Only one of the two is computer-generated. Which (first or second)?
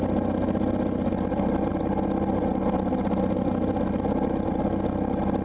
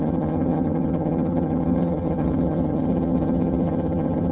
second